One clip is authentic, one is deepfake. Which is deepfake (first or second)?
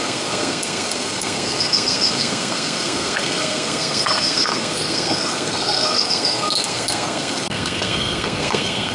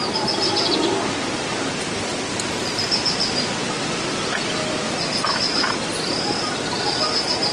first